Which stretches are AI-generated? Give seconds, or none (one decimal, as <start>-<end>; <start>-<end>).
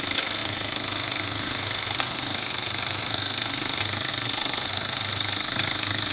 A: 0.0-6.1